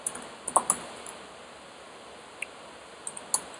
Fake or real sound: real